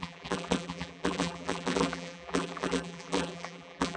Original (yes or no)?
no